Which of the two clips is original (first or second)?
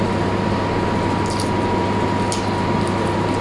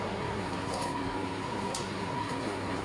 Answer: first